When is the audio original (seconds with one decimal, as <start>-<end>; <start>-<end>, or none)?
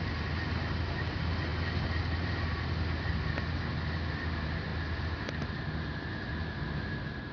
0.0-7.3